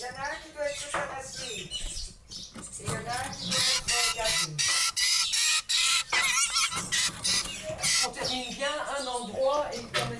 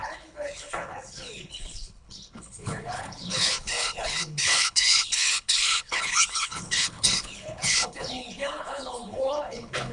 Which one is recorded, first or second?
first